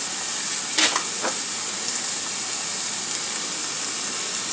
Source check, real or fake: real